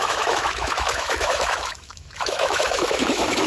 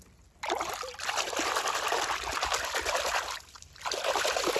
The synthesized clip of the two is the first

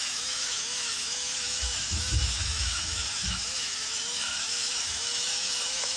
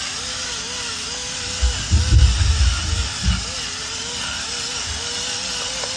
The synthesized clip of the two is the first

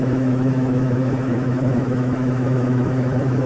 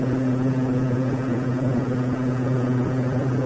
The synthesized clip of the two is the first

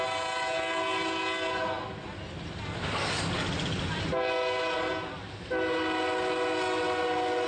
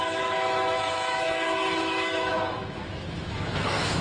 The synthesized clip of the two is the second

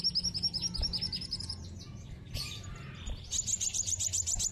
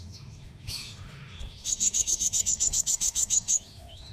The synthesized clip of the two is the second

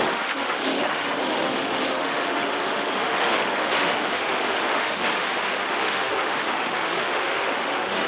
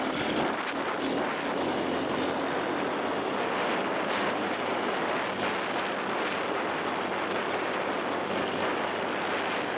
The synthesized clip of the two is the first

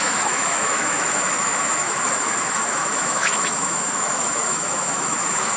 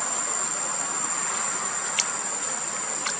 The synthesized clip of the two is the first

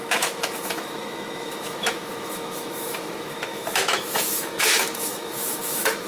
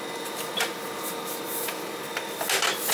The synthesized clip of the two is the first